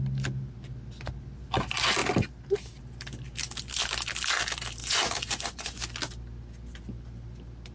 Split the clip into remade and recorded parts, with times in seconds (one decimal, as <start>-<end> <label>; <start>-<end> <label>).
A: 0.0-4.8 recorded; 4.8-5.8 remade; 5.8-7.7 recorded